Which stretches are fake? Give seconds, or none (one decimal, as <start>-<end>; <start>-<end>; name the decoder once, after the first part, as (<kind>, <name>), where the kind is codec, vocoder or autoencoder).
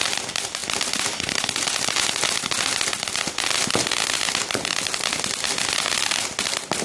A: none